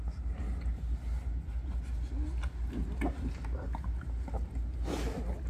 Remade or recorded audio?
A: recorded